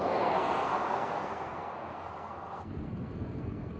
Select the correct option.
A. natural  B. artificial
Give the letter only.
B